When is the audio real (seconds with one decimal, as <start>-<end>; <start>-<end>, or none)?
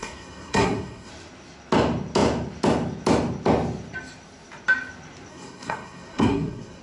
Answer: 1.1-5.3